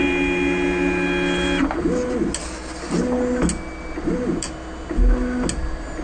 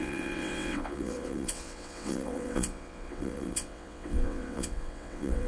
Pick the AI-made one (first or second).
second